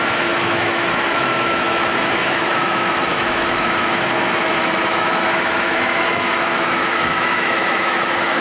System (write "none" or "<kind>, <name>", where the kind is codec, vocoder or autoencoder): autoencoder, DAC-VAE